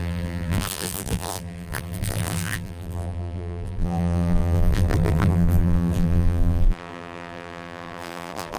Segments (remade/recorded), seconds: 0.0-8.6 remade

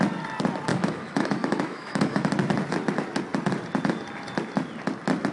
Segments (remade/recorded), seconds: 0.0-0.7 recorded; 0.7-2.3 remade; 2.3-5.3 recorded

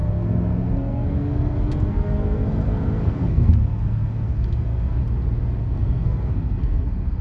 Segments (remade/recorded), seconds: 0.0-5.0 remade; 5.0-5.6 recorded; 5.6-7.2 remade

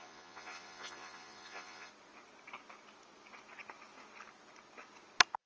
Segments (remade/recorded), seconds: 0.0-1.9 remade; 1.9-5.5 recorded